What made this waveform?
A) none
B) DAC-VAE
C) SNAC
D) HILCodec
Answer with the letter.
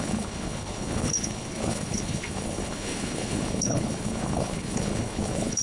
D